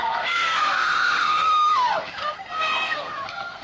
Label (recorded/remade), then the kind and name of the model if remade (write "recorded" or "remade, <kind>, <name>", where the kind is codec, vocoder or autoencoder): remade, codec, SNAC